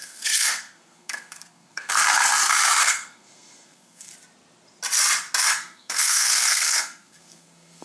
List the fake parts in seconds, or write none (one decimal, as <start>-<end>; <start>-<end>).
0.0-2.0; 2.8-4.1; 5.4-7.8